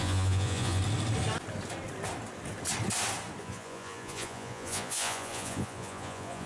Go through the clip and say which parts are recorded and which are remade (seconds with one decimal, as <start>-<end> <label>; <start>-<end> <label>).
0.0-0.8 remade; 0.8-3.4 recorded; 3.4-6.5 remade